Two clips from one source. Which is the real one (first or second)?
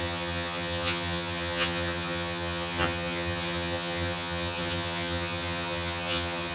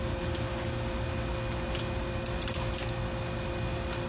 second